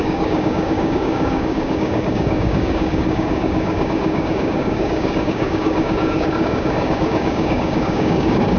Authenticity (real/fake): fake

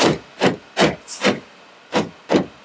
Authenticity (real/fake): real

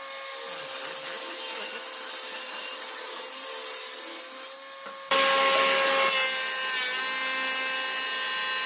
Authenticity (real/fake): real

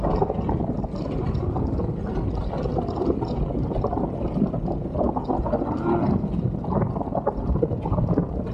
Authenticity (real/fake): real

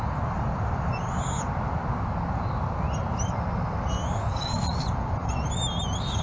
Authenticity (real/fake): real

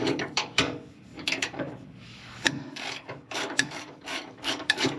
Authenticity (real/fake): fake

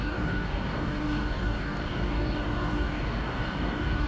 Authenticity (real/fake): fake